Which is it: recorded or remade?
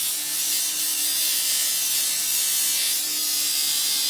recorded